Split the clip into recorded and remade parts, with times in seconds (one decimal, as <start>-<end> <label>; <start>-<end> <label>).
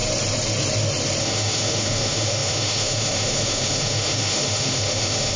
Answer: 0.0-1.2 recorded; 1.2-5.4 remade